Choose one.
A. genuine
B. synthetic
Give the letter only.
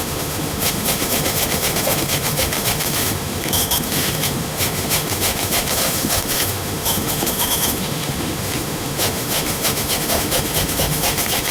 B